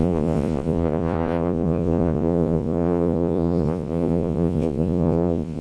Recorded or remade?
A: remade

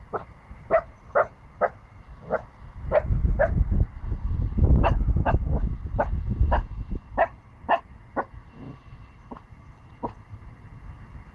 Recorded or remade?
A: recorded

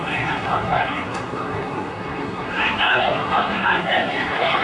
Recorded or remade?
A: remade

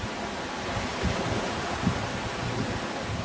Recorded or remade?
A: recorded